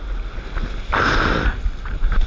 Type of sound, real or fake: real